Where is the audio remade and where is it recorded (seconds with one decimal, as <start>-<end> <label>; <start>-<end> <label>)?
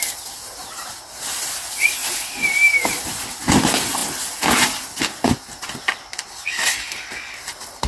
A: 0.0-2.0 recorded; 2.0-3.4 remade; 3.4-7.9 recorded